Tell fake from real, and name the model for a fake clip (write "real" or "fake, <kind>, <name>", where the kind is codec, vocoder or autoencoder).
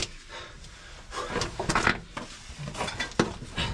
real